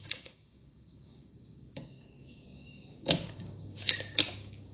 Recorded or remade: remade